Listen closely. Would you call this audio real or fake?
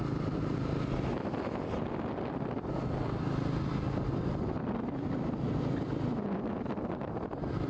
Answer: real